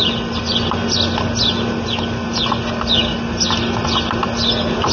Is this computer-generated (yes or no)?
no